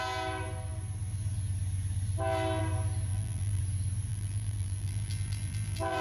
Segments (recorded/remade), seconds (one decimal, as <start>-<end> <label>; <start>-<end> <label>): 0.0-3.1 recorded; 3.1-3.6 remade; 3.6-4.1 recorded; 4.1-6.0 remade